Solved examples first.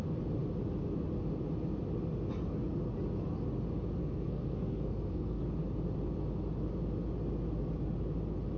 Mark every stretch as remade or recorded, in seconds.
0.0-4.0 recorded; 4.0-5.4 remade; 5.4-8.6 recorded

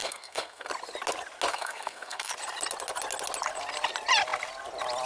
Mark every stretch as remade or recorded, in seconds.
0.0-0.7 remade; 0.7-1.5 recorded; 1.5-2.3 remade; 2.3-5.1 recorded

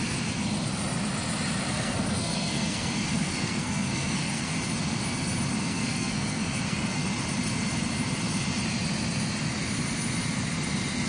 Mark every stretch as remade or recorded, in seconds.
0.0-1.7 recorded; 1.7-4.5 remade; 4.5-5.6 recorded; 5.6-7.0 remade; 7.0-11.1 recorded